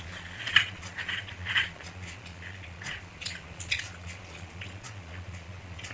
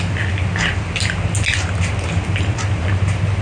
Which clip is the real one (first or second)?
second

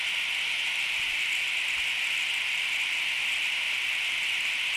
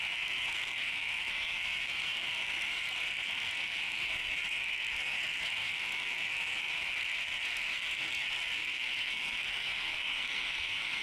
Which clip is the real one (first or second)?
first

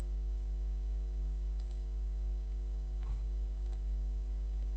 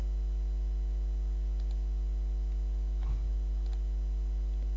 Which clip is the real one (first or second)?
second